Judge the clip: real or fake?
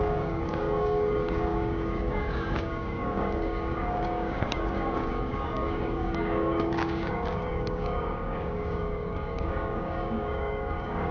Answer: fake